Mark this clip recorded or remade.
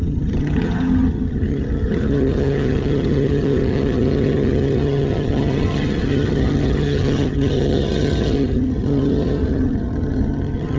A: remade